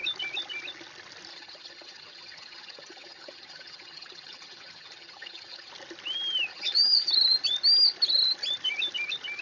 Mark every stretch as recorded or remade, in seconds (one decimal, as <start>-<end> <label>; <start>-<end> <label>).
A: 0.0-1.3 recorded; 1.3-5.7 remade; 5.7-6.5 recorded; 6.5-7.1 remade; 7.1-9.4 recorded